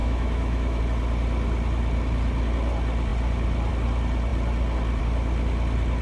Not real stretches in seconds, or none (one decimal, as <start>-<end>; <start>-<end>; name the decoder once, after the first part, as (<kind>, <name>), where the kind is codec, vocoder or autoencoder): 0.0-0.8 (autoencoder, DAC-VAE)